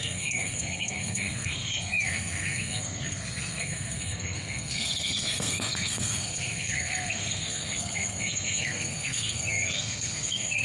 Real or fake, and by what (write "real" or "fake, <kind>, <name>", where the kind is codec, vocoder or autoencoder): fake, codec, SNAC